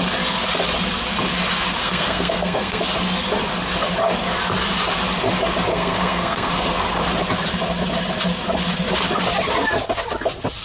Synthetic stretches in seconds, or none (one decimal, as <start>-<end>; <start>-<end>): 1.8-2.8; 5.7-6.5